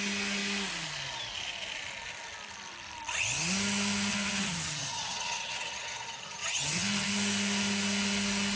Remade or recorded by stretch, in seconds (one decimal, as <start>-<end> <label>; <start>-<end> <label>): 0.0-4.1 recorded; 4.1-7.1 remade; 7.1-8.6 recorded